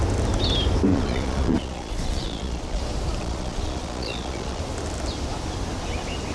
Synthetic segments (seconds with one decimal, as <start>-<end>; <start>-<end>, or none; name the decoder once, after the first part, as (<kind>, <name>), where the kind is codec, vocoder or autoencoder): 0.9-2.8 (vocoder, Vocos); 3.2-4.6